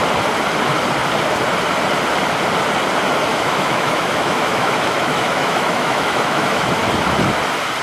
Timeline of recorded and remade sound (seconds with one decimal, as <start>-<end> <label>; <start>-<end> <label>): 0.0-3.3 recorded; 3.3-6.8 remade; 6.8-7.8 recorded